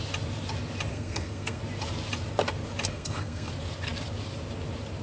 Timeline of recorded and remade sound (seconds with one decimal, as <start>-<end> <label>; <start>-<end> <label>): 0.0-0.9 recorded; 0.9-1.6 remade; 1.6-2.9 recorded; 2.9-3.5 remade; 3.5-5.0 recorded